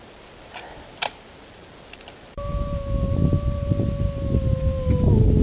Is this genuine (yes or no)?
yes